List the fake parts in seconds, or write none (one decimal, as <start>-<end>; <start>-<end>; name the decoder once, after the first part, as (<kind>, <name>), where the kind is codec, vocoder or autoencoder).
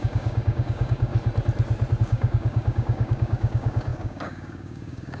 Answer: 0.0-1.1 (codec, DAC); 2.0-5.2